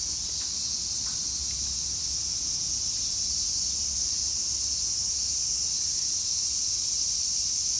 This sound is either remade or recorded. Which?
recorded